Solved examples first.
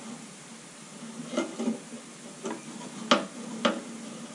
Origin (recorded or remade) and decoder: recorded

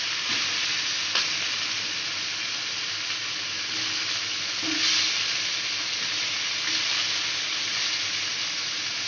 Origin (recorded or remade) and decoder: recorded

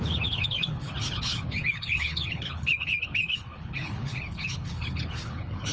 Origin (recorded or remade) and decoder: remade, codec, HILCodec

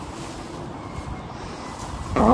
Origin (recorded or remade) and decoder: recorded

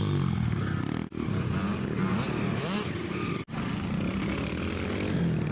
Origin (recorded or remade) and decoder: recorded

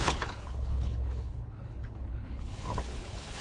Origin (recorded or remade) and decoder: remade, codec, HILCodec